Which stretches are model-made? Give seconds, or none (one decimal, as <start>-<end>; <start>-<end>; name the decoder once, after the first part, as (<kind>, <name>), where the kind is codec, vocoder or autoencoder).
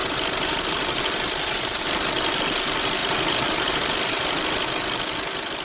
0.0-1.8 (vocoder, BigVGAN v2); 3.0-4.1